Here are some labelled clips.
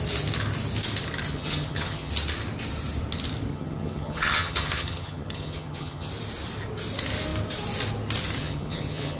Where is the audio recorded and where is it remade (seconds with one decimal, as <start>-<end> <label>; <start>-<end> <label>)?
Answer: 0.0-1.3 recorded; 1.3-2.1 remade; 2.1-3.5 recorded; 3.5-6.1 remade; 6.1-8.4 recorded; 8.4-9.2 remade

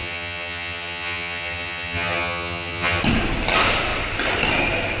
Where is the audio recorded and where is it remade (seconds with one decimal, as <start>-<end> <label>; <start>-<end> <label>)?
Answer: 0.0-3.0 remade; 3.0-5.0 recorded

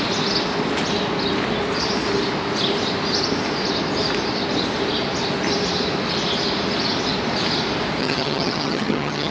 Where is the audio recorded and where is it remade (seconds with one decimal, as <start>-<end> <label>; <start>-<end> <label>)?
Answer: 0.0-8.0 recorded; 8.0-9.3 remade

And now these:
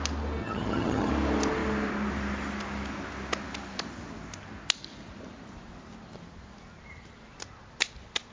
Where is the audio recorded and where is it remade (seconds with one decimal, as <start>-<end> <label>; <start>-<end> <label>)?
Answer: 0.0-0.4 recorded; 0.4-1.1 remade; 1.1-8.3 recorded

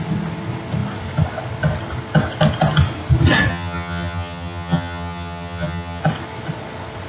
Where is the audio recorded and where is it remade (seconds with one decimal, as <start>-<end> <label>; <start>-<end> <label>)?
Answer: 0.0-3.5 recorded; 3.5-6.0 remade; 6.0-7.1 recorded

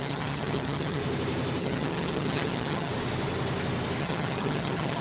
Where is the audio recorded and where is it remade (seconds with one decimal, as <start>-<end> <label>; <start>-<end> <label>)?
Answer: 0.0-1.0 remade; 1.0-1.6 recorded; 1.6-2.9 remade; 2.9-4.0 recorded; 4.0-5.0 remade

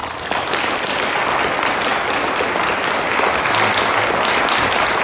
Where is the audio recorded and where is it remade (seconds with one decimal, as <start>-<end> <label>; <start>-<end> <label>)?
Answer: 0.0-5.0 recorded